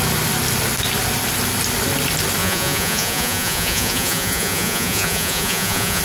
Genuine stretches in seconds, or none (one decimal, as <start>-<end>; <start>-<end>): 0.0-2.4